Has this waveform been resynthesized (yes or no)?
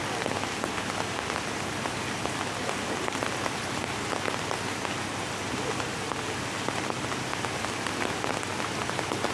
no